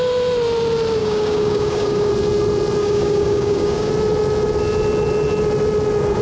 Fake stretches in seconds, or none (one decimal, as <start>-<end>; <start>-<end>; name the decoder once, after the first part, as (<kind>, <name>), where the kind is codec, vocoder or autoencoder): 1.0-2.1 (codec, DAC); 2.8-3.9